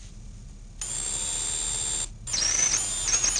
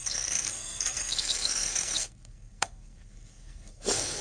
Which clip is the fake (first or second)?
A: second